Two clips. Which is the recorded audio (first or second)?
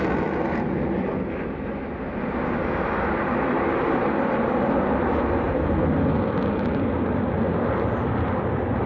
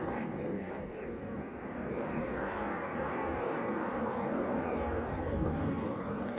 first